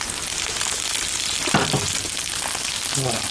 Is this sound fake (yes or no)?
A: no